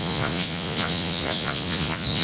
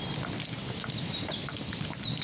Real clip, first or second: second